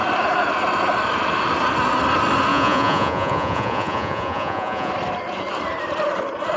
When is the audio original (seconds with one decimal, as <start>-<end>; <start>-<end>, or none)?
0.0-2.5; 4.9-6.6